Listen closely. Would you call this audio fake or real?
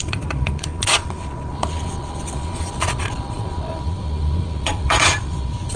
fake